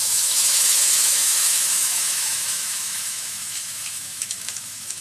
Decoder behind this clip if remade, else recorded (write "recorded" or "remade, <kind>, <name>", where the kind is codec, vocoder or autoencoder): remade, autoencoder, DAC-VAE